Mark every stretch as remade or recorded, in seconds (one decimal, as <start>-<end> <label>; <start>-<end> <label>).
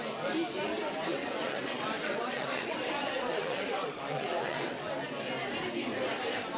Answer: 0.0-1.1 recorded; 1.1-4.9 remade; 4.9-6.6 recorded